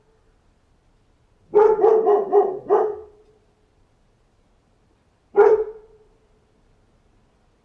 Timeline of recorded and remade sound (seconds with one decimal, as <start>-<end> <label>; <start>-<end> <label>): 0.0-4.6 recorded; 4.6-6.2 remade; 6.2-7.6 recorded